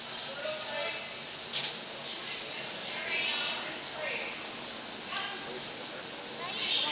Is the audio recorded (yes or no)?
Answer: yes